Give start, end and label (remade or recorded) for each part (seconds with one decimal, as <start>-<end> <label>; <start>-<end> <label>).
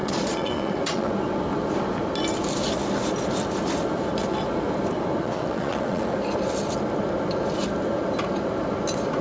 0.0-1.1 remade; 1.1-5.2 recorded; 5.2-6.1 remade; 6.1-9.2 recorded